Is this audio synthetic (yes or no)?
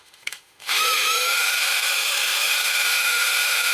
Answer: yes